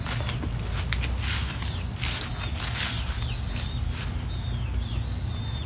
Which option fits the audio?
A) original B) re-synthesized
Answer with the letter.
A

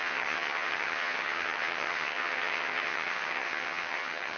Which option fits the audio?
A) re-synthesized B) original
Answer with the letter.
A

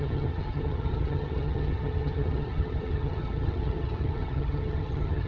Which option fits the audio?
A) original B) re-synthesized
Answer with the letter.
B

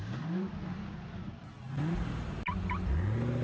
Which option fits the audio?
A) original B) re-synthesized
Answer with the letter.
A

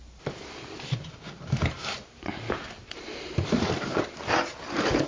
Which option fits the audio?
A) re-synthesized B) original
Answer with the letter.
B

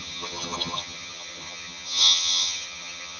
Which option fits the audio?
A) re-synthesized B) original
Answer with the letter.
A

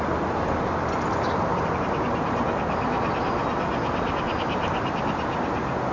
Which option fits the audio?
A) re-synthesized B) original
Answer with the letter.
B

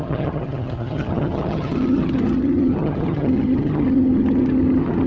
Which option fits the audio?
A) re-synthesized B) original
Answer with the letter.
A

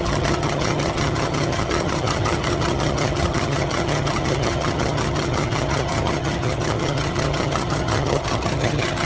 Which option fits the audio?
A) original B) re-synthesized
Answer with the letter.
B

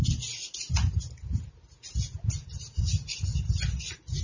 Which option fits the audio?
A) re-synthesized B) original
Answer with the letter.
B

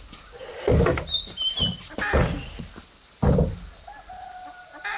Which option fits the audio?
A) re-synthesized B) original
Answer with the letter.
B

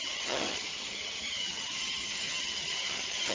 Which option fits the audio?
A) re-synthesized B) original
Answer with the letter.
A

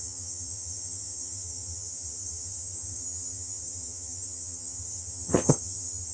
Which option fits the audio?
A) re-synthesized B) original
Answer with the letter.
A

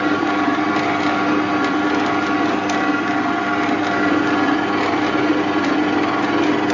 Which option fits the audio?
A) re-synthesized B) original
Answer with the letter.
B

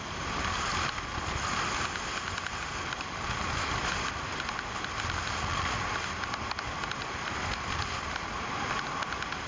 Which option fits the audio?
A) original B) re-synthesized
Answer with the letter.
A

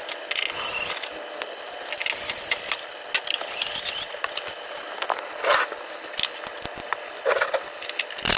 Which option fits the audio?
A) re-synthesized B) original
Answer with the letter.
B